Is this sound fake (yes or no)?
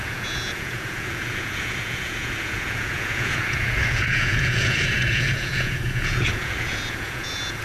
yes